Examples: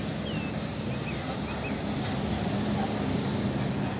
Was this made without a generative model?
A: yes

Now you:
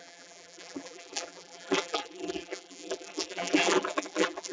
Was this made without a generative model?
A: no